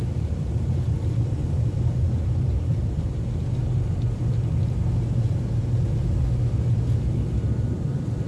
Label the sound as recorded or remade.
remade